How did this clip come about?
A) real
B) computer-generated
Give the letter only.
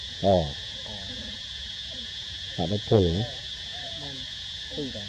B